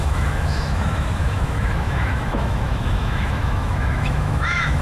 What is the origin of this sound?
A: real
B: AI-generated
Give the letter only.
B